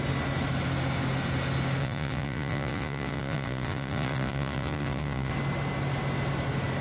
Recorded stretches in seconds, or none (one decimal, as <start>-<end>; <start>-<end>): 0.0-1.8; 5.3-6.8